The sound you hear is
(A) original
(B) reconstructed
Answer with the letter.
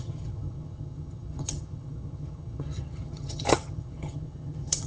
B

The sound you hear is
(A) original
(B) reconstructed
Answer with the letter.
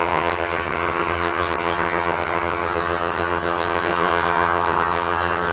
B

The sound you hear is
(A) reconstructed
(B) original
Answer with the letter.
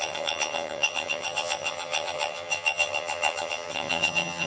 A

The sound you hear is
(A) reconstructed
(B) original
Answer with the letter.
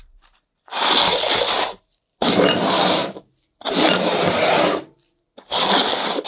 B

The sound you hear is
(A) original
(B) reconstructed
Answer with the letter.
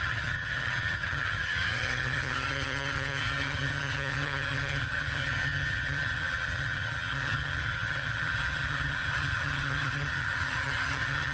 B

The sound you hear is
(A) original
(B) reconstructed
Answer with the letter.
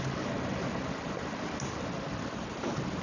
A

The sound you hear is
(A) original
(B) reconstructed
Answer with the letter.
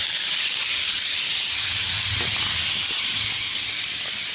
A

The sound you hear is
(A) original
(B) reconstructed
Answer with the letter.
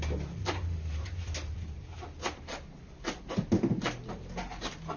A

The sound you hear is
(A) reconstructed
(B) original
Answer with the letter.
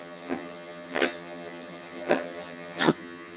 A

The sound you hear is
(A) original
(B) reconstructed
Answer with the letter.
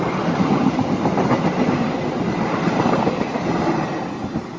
A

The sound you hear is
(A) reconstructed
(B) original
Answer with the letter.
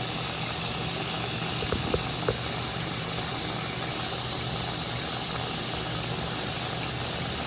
B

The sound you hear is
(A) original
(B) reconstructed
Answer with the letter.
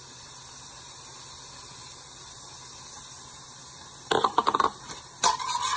A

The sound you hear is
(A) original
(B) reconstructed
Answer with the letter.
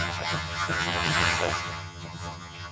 B